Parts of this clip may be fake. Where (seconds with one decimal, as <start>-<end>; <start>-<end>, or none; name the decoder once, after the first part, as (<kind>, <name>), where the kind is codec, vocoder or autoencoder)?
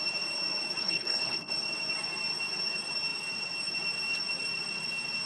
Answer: 0.8-1.5 (codec, HILCodec)